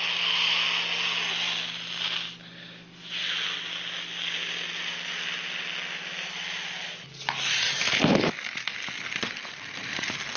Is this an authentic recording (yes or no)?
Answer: yes